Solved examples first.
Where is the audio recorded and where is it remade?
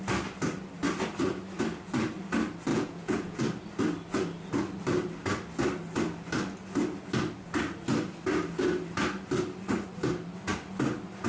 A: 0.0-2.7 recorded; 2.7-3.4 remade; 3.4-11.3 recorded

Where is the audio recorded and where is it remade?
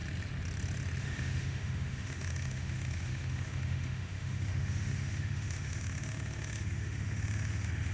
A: 0.0-1.0 recorded; 1.0-7.9 remade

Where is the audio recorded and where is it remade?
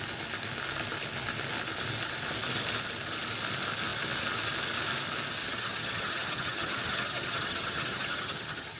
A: 0.0-5.4 recorded; 5.4-8.8 remade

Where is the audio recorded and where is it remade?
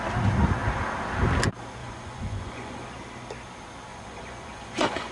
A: 0.0-1.8 recorded; 1.8-2.8 remade; 2.8-3.9 recorded; 3.9-5.1 remade